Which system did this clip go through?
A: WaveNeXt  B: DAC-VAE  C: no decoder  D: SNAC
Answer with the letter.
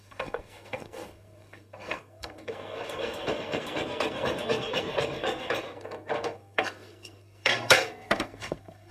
D